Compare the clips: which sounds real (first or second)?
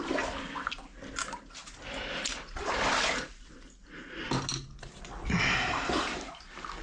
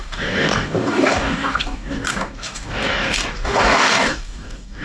first